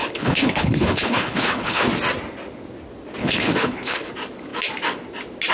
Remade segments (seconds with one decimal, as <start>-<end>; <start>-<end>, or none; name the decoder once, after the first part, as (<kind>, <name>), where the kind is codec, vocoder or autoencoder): 0.0-1.9 (codec, HILCodec); 3.2-4.1